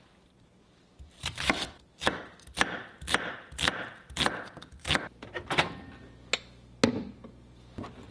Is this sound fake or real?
real